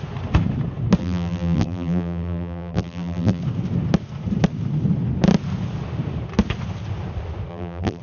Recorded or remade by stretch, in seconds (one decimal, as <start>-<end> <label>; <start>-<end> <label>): 0.0-1.0 recorded; 1.0-3.4 remade; 3.4-7.5 recorded; 7.5-8.0 remade